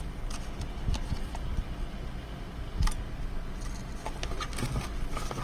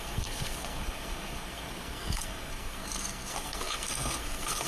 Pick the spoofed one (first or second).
second